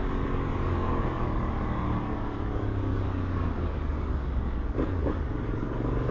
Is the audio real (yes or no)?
no